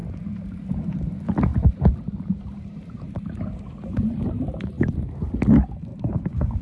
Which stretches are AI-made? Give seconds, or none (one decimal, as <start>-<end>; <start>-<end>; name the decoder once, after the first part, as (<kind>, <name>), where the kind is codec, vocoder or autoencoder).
0.0-1.1 (vocoder, BigVGAN v2); 1.5-4.7; 5.9-6.6